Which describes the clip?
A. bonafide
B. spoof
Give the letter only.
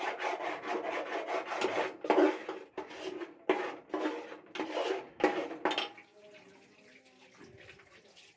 A